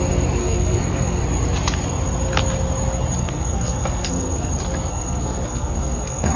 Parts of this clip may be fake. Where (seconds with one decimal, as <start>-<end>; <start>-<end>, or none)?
0.4-1.2; 3.2-4.5; 4.9-6.4